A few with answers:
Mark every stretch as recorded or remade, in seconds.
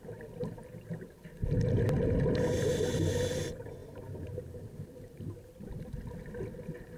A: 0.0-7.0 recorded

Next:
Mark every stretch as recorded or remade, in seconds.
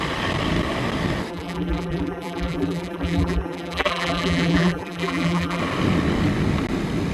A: 0.0-1.3 recorded; 1.3-5.6 remade; 5.6-7.1 recorded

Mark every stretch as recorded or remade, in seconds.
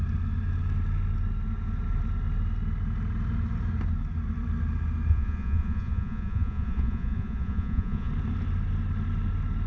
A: 0.0-5.1 recorded; 5.1-8.1 remade; 8.1-9.7 recorded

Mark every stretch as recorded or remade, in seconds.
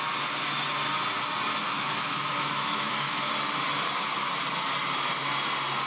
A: 0.0-1.7 recorded; 1.7-3.3 remade; 3.3-5.9 recorded